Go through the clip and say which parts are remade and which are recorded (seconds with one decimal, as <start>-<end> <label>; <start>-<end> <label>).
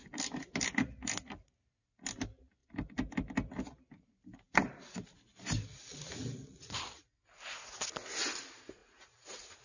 0.0-8.8 recorded; 8.8-9.6 remade